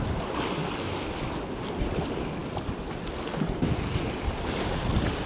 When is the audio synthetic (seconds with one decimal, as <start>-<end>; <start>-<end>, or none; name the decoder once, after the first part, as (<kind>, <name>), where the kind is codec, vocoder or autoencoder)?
none